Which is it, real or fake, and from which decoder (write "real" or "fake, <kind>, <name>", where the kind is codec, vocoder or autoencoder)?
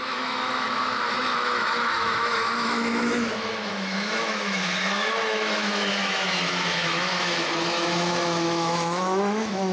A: fake, autoencoder, DAC-VAE